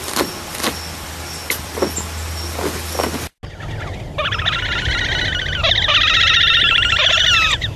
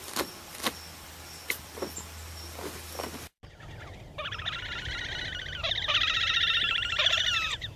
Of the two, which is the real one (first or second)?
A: first